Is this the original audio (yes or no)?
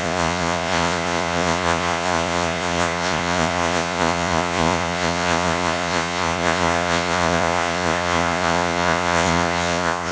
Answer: no